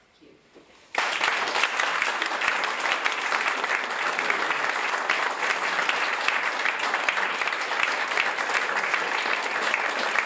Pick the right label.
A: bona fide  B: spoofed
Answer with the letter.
B